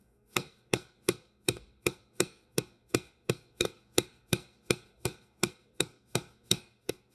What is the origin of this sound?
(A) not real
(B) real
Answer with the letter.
A